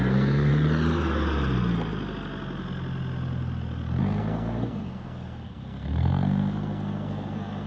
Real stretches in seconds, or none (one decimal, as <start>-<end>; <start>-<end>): 0.5-4.0

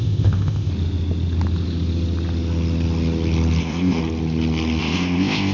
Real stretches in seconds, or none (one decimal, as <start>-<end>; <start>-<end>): 0.7-3.6; 4.0-4.8

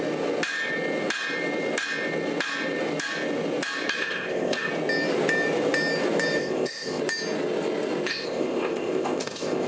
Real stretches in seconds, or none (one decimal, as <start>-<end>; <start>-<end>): 0.0-4.0; 4.7-6.4; 7.0-8.1